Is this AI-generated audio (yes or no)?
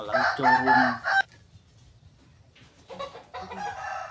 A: no